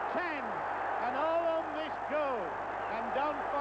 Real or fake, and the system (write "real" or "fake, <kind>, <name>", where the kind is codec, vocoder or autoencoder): real